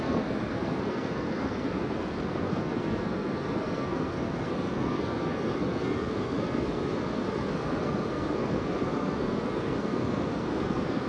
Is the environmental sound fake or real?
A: fake